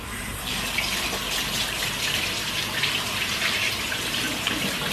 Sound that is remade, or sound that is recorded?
remade